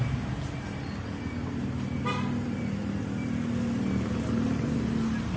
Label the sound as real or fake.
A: real